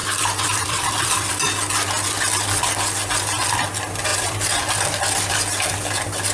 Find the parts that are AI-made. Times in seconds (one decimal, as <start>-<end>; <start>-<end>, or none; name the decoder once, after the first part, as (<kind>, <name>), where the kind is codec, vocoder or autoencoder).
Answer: 0.0-1.3 (vocoder, BigVGAN v2); 4.1-5.6